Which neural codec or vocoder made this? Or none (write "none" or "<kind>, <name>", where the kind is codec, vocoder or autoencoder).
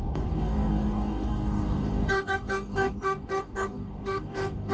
codec, DAC